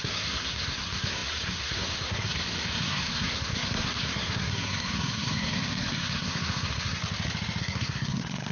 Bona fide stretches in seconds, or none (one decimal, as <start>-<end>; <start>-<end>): 7.0-7.6